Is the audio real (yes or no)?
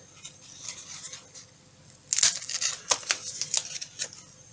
yes